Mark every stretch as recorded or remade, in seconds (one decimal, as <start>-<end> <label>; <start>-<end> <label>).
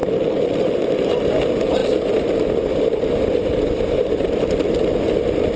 0.0-5.6 recorded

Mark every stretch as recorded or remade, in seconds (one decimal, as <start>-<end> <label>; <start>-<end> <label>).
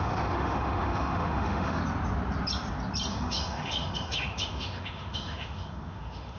0.0-1.8 remade; 1.8-3.1 recorded; 3.1-6.4 remade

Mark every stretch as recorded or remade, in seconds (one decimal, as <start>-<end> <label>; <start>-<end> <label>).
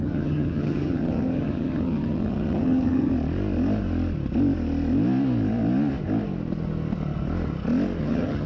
0.0-3.1 remade; 3.1-8.0 recorded; 8.0-8.5 remade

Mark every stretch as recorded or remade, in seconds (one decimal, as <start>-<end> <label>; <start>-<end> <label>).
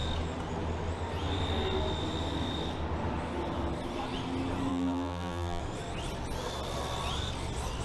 0.0-4.7 recorded; 4.7-5.6 remade; 5.6-7.8 recorded